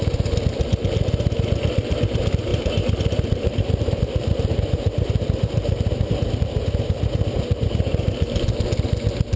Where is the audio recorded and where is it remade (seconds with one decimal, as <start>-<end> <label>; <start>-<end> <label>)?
0.0-2.5 recorded; 2.5-6.1 remade; 6.1-9.4 recorded